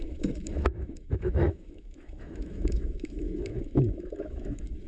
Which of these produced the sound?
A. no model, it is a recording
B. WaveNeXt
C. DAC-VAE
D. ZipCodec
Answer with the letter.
C